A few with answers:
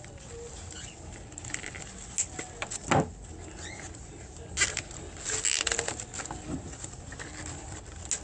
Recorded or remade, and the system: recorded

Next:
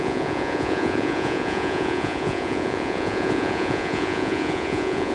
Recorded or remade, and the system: remade, vocoder, Vocos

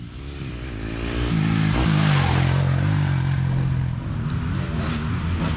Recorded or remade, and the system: recorded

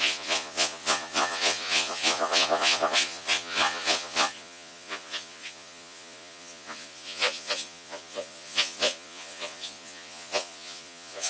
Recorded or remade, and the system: remade, vocoder, Vocos